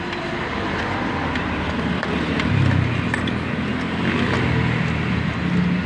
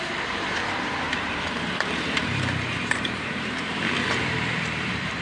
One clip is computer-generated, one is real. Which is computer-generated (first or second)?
second